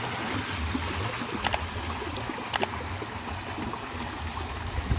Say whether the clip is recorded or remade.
recorded